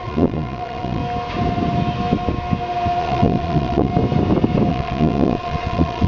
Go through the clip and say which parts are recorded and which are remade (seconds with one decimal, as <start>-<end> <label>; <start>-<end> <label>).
0.0-1.0 remade; 1.0-3.0 recorded; 3.0-3.9 remade; 3.9-4.7 recorded; 4.7-6.1 remade